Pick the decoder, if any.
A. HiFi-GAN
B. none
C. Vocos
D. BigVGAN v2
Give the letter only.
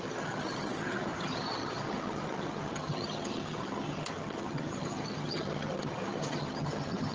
A